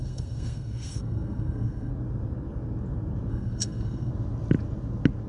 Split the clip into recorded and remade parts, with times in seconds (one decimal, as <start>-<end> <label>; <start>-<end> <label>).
0.0-1.9 remade; 1.9-3.3 recorded; 3.3-4.1 remade; 4.1-5.3 recorded